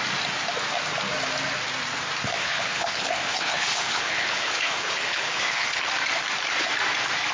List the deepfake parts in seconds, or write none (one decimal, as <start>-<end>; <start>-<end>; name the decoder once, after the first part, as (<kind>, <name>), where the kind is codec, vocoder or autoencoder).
2.4-5.8 (codec, HILCodec)